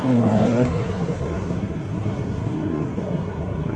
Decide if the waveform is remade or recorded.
remade